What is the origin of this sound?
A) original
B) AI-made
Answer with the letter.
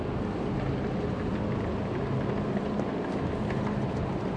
A